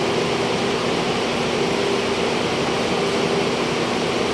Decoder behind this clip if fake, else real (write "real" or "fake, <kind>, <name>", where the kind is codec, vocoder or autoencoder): real